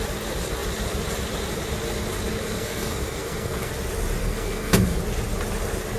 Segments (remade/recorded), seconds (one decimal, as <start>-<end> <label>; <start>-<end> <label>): 0.0-2.4 recorded; 2.4-3.7 remade; 3.7-4.2 recorded; 4.2-5.0 remade; 5.0-6.0 recorded